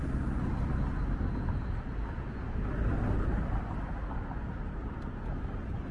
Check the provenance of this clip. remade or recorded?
recorded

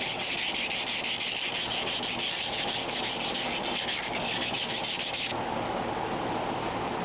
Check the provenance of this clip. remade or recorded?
recorded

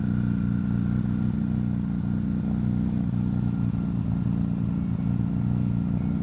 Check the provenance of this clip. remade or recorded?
recorded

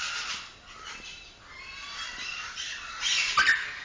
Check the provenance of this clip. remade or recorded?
recorded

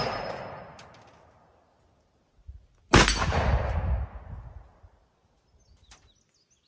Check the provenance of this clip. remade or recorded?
recorded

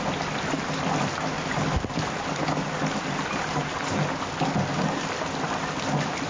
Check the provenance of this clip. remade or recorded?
recorded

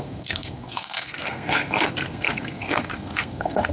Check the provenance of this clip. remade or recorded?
remade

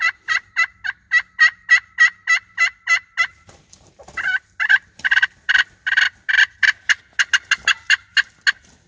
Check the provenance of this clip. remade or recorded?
recorded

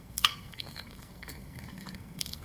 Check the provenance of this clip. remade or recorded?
remade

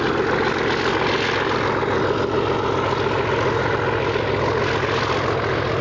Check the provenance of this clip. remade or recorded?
recorded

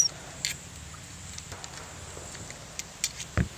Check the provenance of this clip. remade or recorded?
recorded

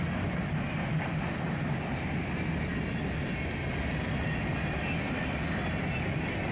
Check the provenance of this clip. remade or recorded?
recorded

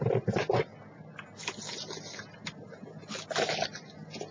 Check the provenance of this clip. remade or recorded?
recorded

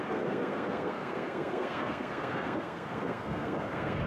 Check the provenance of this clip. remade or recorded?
remade